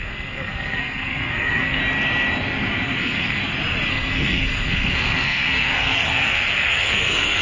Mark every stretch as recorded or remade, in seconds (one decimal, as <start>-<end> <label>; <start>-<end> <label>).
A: 0.0-1.8 remade; 1.8-3.0 recorded; 3.0-3.4 remade; 3.4-3.9 recorded; 3.9-7.4 remade